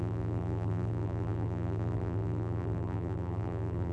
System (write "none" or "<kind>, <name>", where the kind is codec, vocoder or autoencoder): vocoder, BigVGAN v2